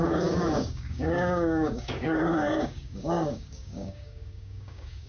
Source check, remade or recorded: remade